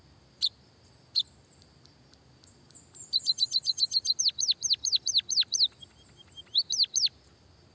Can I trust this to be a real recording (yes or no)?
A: yes